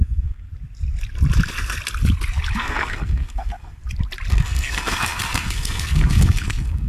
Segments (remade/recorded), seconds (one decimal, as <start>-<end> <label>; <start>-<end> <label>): 0.0-0.5 remade; 0.5-2.6 recorded; 2.6-3.8 remade; 3.8-4.3 recorded; 4.3-6.9 remade

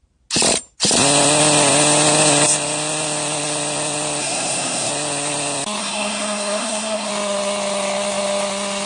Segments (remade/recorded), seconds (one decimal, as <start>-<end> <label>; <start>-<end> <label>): 0.0-4.2 recorded; 4.2-4.9 remade; 4.9-5.8 recorded; 5.8-7.1 remade; 7.1-8.9 recorded

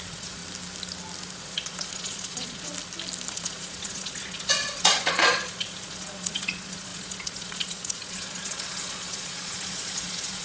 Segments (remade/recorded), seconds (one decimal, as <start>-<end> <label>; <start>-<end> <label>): 0.0-0.4 remade; 0.4-1.4 recorded; 1.4-2.7 remade; 2.7-3.3 recorded; 3.3-10.4 remade

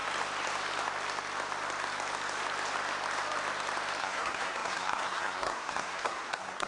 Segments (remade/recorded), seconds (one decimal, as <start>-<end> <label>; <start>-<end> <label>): 0.0-4.0 recorded; 4.0-6.7 remade

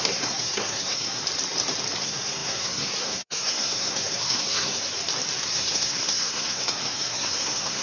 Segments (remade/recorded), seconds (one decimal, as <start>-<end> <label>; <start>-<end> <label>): 0.0-1.2 remade; 1.2-2.0 recorded; 2.0-4.9 remade; 4.9-5.4 recorded; 5.4-7.8 remade

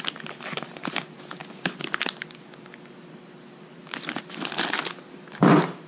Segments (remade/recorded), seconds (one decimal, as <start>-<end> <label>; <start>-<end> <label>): 0.0-5.9 recorded